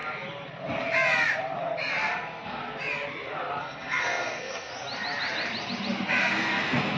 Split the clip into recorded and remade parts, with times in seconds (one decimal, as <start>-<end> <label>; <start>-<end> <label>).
0.0-2.0 recorded; 2.0-2.6 remade; 2.6-3.6 recorded; 3.6-4.7 remade; 4.7-6.2 recorded; 6.2-7.0 remade